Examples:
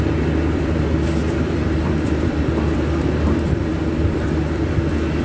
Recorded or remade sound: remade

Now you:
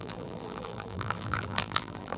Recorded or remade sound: remade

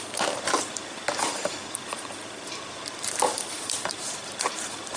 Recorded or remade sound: remade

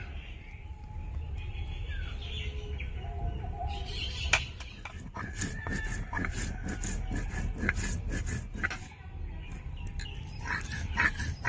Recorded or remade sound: recorded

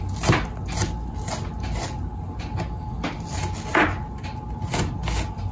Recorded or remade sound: recorded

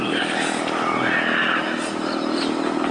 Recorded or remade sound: recorded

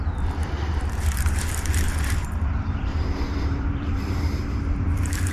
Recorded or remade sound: remade